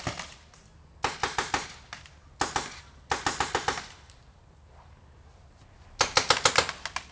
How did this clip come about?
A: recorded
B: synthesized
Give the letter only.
A